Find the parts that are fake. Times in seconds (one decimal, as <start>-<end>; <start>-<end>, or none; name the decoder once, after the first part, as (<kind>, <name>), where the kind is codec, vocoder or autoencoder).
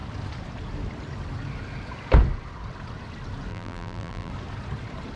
3.5-4.3 (vocoder, BigVGAN v2)